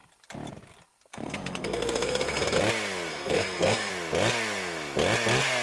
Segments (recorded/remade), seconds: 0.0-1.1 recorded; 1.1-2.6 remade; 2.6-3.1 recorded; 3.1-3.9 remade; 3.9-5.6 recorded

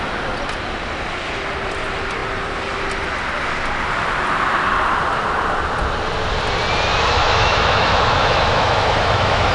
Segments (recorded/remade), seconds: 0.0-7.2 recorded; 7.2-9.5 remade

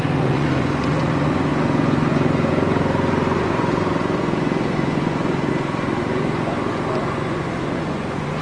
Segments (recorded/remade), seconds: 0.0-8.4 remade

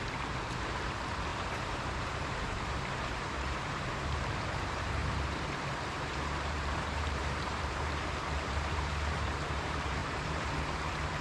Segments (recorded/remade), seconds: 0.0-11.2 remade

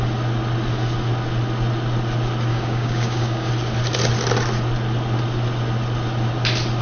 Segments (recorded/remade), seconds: 0.0-2.5 recorded; 2.5-3.5 remade; 3.5-6.8 recorded

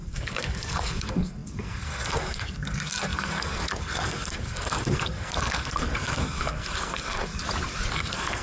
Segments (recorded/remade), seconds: 0.0-7.4 remade; 7.4-7.9 recorded; 7.9-8.4 remade

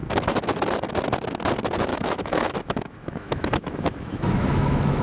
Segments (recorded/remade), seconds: 0.0-1.9 recorded; 1.9-5.0 remade

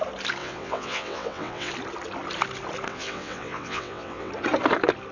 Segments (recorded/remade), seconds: 0.0-0.4 recorded; 0.4-1.7 remade; 1.7-2.9 recorded; 2.9-4.3 remade; 4.3-5.1 recorded